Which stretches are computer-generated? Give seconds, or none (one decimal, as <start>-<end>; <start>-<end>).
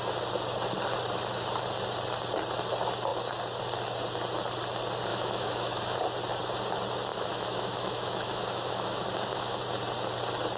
5.1-6.0; 7.1-9.6